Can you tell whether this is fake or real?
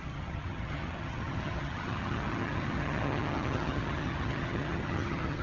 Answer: fake